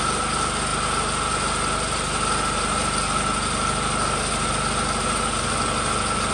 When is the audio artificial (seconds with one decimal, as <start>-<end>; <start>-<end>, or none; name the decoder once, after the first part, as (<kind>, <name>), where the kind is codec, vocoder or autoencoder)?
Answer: none